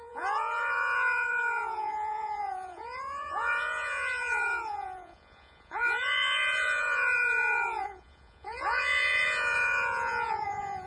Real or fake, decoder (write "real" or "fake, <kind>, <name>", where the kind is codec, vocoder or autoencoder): fake, vocoder, Vocos